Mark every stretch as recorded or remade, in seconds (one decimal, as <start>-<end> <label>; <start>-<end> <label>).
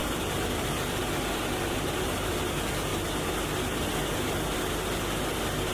0.0-1.0 remade; 1.0-5.7 recorded